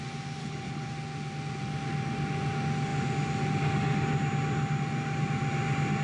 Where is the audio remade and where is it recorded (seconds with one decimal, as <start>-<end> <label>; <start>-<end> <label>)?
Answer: 0.0-0.4 recorded; 0.4-0.9 remade; 0.9-6.0 recorded

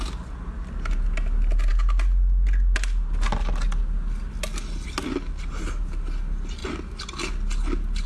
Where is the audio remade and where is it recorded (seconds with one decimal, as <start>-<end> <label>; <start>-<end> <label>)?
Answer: 0.0-8.1 recorded